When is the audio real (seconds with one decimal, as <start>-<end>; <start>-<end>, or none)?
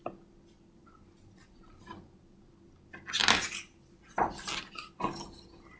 0.0-1.4; 2.5-5.8